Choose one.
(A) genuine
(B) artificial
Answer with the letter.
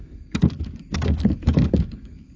B